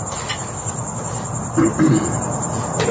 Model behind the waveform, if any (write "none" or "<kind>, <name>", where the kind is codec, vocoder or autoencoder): none